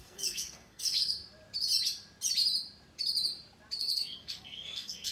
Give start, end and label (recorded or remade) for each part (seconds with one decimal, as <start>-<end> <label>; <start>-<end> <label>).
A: 0.0-1.2 remade; 1.2-3.8 recorded; 3.8-5.1 remade